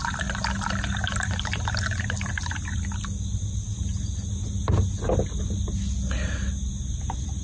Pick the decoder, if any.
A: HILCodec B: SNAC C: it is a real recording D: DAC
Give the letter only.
C